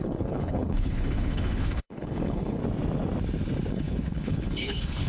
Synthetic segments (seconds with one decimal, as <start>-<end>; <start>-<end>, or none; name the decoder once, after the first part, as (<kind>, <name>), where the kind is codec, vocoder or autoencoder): 0.0-2.6 (codec, HILCodec); 3.7-5.1